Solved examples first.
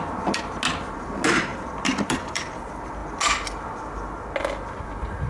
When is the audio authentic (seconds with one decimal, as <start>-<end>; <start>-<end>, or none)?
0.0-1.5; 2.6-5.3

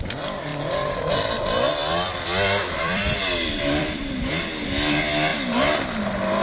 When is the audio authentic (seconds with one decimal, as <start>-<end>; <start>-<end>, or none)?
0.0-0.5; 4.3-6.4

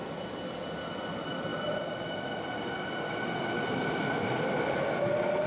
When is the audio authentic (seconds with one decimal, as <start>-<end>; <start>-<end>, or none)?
0.0-5.5

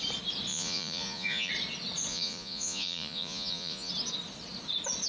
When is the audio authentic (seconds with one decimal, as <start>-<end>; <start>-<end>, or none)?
0.0-0.5; 1.5-2.1; 3.9-5.1